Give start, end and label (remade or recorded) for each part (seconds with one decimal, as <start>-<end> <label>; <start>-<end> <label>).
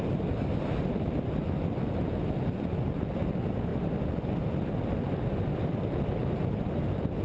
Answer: 0.0-7.2 recorded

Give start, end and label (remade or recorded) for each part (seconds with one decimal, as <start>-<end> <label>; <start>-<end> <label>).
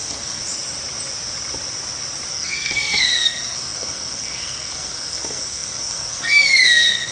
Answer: 0.0-0.4 remade; 0.4-2.3 recorded; 2.3-7.1 remade